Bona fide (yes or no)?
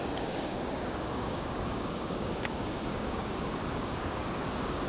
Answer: no